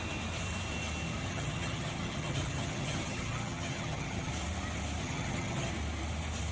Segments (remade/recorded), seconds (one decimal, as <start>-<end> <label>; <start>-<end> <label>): 0.0-1.2 recorded; 1.2-4.3 remade; 4.3-5.0 recorded; 5.0-5.7 remade; 5.7-6.5 recorded